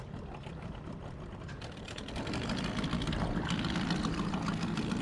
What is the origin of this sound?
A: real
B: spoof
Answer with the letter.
A